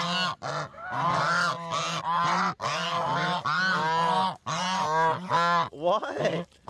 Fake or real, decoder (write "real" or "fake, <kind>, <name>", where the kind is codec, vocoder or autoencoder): real